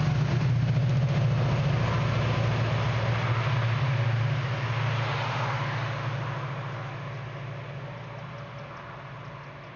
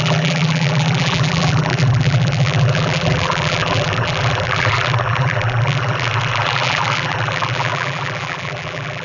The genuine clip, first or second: first